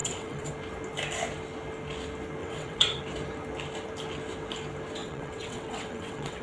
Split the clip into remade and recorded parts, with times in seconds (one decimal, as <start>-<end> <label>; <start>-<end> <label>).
0.0-0.5 remade; 0.5-2.4 recorded; 2.4-3.0 remade; 3.0-5.0 recorded; 5.0-6.4 remade